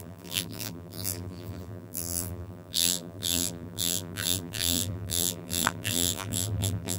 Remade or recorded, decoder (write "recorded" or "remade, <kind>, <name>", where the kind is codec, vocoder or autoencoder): remade, vocoder, BigVGAN v2